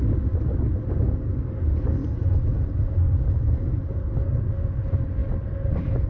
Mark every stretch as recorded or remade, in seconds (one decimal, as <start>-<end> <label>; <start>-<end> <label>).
0.0-2.0 recorded; 2.0-3.9 remade; 3.9-5.2 recorded; 5.2-6.1 remade